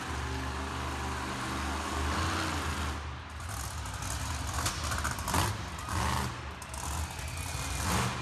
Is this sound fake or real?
real